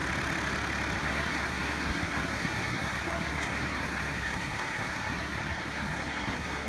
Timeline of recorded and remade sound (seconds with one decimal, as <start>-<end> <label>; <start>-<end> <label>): 0.0-1.0 recorded; 1.0-6.7 remade